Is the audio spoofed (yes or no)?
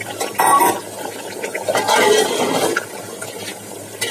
no